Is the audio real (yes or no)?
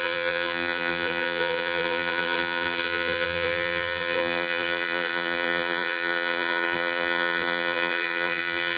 no